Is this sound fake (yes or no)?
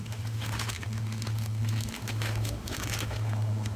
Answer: yes